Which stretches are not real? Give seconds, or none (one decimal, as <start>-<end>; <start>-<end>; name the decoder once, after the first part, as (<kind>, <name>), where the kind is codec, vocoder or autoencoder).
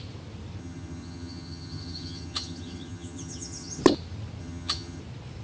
0.6-3.8 (vocoder, HiFi-GAN); 4.4-5.0